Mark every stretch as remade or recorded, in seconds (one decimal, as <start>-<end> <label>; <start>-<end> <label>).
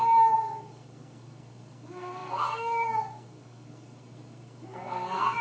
0.0-5.4 remade